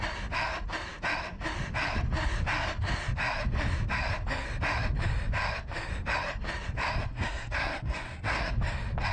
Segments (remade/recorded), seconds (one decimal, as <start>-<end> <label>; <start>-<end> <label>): 0.0-7.1 recorded; 7.1-8.5 remade; 8.5-9.1 recorded